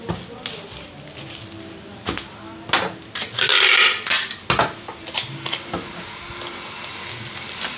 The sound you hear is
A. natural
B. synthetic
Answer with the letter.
A